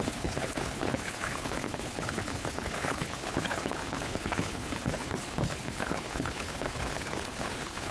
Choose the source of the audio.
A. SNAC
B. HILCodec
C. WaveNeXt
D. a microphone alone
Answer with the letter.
B